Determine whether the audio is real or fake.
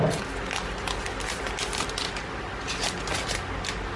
real